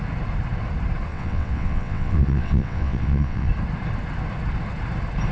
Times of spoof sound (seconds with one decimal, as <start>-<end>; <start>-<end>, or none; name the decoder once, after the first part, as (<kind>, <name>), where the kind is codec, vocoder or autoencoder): 1.1-3.5 (vocoder, WaveNeXt)